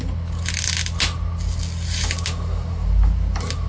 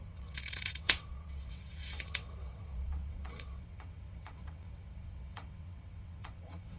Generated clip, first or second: second